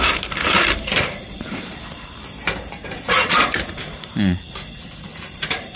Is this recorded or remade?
remade